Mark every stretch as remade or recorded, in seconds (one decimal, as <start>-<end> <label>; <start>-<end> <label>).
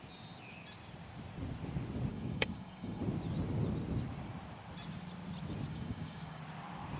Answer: 0.0-2.1 recorded; 2.1-3.0 remade; 3.0-5.7 recorded; 5.7-6.4 remade; 6.4-7.0 recorded